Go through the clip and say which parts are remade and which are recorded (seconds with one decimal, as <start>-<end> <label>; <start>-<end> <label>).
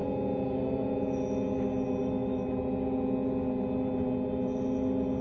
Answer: 0.0-2.0 recorded; 2.0-2.5 remade; 2.5-5.2 recorded